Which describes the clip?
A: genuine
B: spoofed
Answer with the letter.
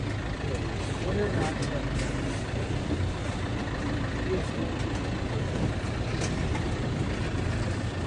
A